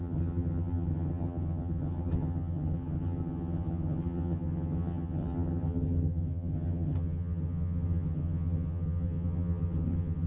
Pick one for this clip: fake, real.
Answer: fake